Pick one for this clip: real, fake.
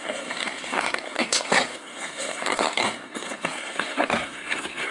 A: fake